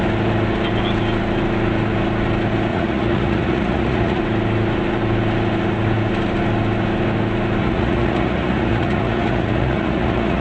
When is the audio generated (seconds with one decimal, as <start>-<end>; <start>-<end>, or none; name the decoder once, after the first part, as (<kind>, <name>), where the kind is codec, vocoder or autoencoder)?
2.7-4.2 (vocoder, Vocos); 7.6-10.4